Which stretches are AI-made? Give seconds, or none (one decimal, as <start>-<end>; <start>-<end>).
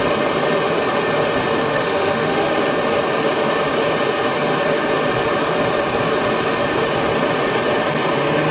1.6-2.6